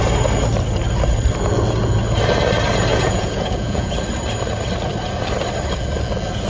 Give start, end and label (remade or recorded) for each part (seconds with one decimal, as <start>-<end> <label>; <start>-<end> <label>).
0.0-2.9 recorded; 2.9-3.9 remade; 3.9-6.5 recorded